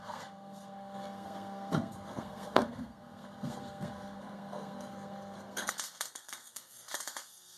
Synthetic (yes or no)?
yes